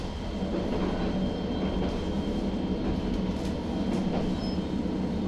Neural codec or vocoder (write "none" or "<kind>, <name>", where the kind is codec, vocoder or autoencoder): none